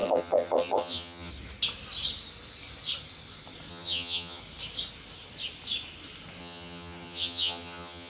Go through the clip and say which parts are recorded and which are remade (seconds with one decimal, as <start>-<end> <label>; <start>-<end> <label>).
0.0-1.3 remade; 1.3-3.7 recorded; 3.7-4.4 remade; 4.4-6.4 recorded; 6.4-8.1 remade